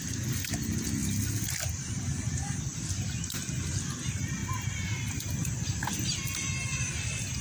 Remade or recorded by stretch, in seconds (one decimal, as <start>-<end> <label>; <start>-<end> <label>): 0.0-4.4 recorded; 4.4-7.4 remade